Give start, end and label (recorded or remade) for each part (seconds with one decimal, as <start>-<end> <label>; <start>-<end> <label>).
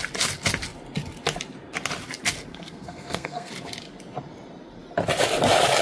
0.0-2.5 recorded; 2.5-3.5 remade; 3.5-5.8 recorded